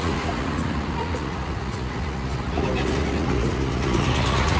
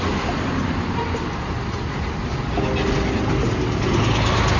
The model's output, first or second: first